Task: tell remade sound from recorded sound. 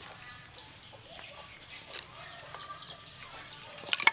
recorded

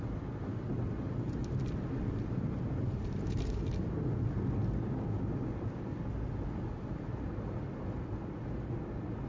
recorded